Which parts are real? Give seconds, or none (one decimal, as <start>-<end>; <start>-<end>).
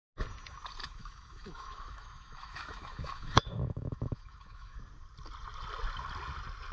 0.0-0.8; 4.8-6.7